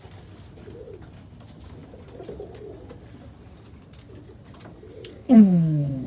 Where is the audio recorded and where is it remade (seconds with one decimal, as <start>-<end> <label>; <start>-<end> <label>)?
0.0-5.1 recorded; 5.1-6.1 remade